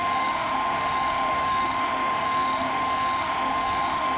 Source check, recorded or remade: remade